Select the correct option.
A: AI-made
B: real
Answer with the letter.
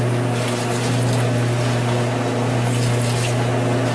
B